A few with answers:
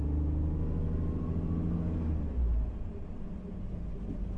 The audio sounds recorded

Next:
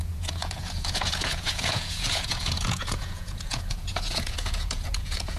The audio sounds remade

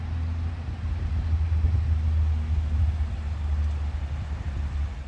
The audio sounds recorded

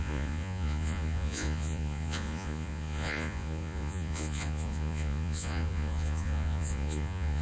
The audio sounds remade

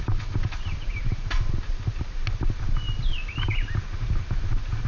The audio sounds recorded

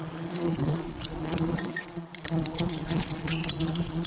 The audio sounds remade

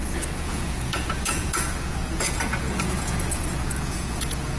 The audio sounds remade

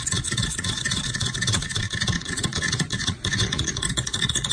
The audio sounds remade